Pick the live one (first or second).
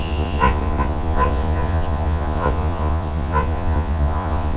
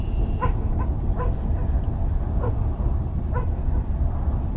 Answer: second